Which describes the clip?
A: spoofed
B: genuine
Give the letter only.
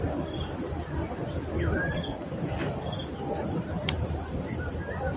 B